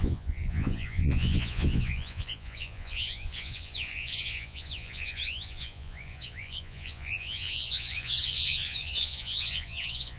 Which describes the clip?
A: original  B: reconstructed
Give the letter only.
B